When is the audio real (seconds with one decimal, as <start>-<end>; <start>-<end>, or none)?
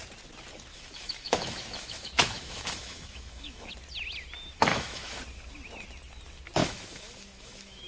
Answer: 0.0-0.7; 3.7-4.7; 5.2-6.6